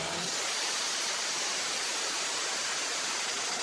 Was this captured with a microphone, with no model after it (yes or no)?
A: yes